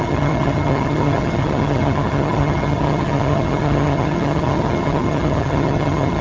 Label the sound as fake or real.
fake